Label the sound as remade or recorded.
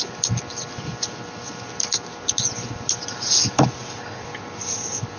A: recorded